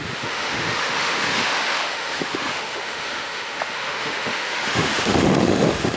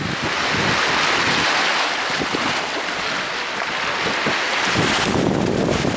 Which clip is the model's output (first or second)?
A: first